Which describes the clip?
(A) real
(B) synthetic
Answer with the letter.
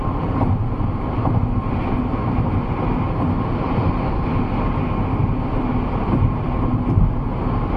A